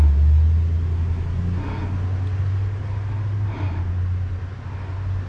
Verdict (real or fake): real